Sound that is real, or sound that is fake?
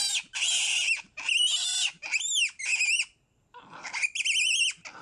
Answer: fake